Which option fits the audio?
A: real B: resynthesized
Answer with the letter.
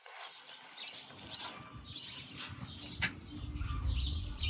A